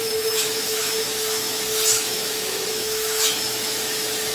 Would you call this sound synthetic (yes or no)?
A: yes